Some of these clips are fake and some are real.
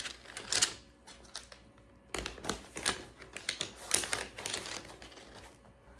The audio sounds real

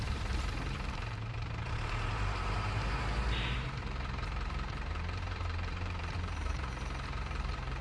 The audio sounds fake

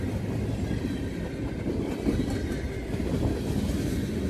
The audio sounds real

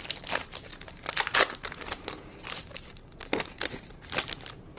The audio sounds real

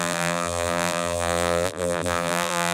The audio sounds fake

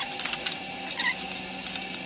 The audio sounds real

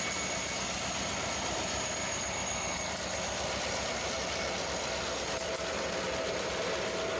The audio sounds real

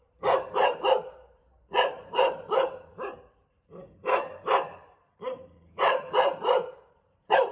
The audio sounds fake